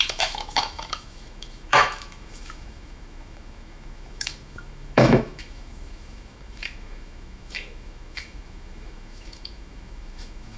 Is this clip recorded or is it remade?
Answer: remade